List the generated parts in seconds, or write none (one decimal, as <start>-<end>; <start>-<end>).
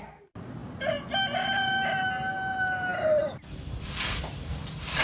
none